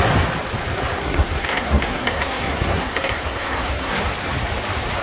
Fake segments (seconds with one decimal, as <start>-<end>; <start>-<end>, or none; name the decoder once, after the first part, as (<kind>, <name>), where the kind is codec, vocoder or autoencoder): 1.0-4.0 (codec, SNAC)